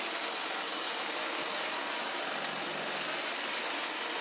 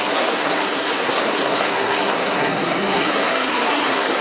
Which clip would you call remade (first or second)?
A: second